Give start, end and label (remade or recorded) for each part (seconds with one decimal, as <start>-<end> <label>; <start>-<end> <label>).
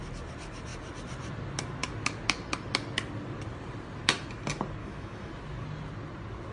0.0-4.8 recorded; 4.8-5.3 remade; 5.3-6.5 recorded